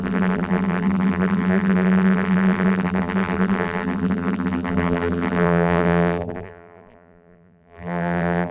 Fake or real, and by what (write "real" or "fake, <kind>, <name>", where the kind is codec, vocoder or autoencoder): fake, vocoder, BigVGAN v2